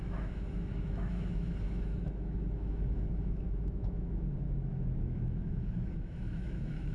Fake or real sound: fake